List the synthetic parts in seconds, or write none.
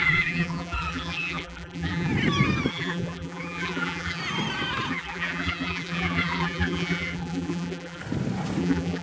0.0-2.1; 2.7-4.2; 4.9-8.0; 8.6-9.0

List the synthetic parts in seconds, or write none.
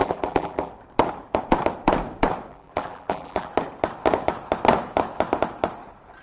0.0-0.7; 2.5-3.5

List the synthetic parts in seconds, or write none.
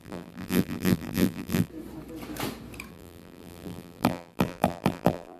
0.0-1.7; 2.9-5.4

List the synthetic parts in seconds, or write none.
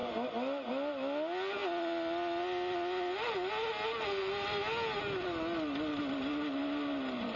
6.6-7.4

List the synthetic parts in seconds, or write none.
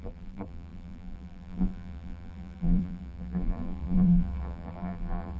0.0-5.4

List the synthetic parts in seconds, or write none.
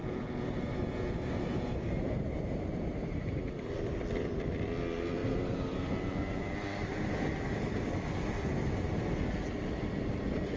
0.0-3.7; 5.2-5.9